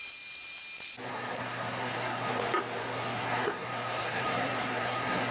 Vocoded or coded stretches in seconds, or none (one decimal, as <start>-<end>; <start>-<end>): 1.1-2.4; 2.8-5.3